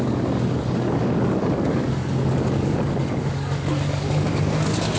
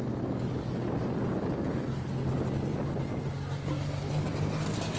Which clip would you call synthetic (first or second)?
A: first